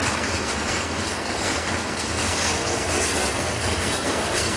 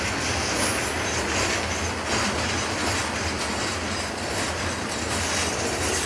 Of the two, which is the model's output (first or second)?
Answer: first